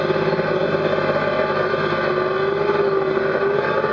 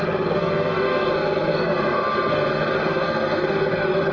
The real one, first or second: first